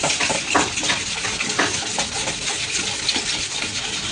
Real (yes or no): yes